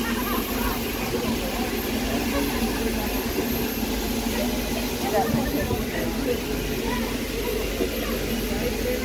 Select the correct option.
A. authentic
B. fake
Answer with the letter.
A